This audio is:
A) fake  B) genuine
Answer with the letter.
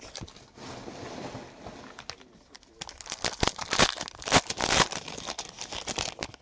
B